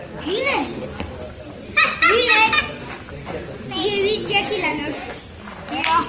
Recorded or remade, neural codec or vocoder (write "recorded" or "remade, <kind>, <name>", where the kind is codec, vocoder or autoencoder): recorded